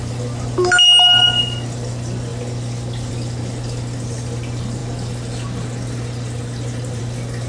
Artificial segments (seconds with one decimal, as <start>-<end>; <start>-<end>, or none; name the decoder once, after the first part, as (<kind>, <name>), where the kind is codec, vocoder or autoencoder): none